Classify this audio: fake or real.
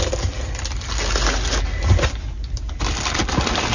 real